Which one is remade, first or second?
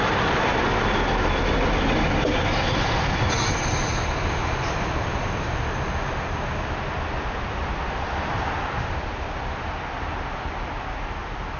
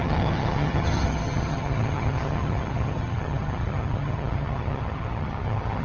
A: second